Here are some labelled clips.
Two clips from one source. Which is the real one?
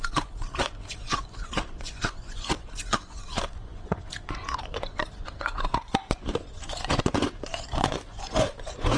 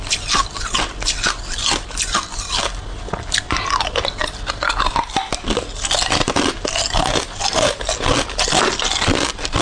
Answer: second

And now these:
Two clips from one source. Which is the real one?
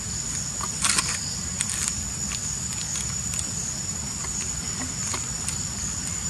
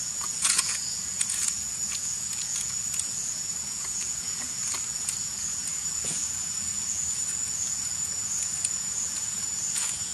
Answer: first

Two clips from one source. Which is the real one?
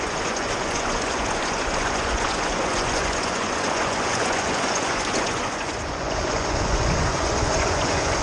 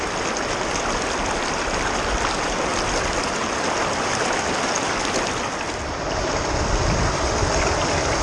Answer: second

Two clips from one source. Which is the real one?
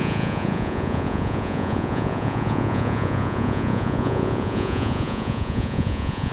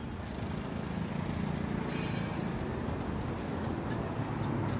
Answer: second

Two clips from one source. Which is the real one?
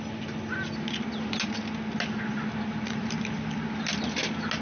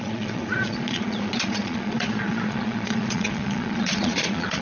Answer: first